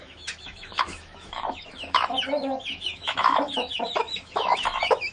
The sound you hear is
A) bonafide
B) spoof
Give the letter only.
B